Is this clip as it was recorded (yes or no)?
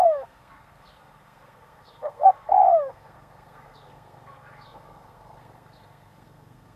no